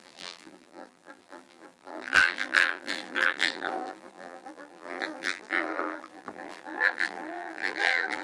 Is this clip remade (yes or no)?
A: yes